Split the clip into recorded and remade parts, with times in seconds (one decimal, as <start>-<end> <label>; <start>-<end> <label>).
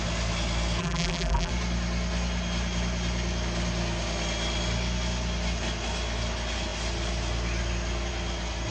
0.0-0.8 recorded; 0.8-1.5 remade; 1.5-8.7 recorded